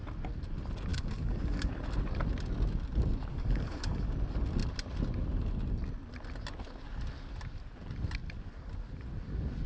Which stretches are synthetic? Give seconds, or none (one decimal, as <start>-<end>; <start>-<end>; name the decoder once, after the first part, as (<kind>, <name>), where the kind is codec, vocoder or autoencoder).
0.9-1.7 (codec, DAC); 3.3-4.1